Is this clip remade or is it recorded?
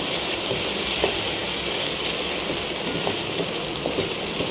remade